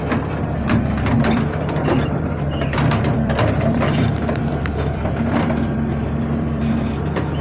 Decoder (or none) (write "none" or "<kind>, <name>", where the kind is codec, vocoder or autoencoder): vocoder, BigVGAN v2